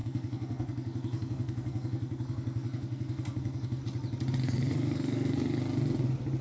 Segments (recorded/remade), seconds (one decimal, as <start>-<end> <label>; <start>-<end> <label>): 0.0-3.8 remade; 3.8-4.4 recorded; 4.4-5.6 remade; 5.6-6.4 recorded